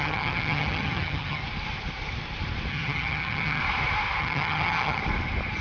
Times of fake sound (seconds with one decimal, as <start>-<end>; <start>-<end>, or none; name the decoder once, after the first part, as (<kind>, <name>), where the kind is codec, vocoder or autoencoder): 0.0-1.4 (vocoder, HiFi-GAN); 2.7-3.6; 4.2-5.0